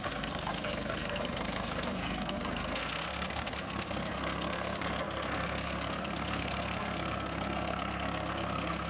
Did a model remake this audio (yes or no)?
yes